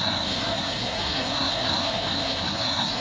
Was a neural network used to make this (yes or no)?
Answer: yes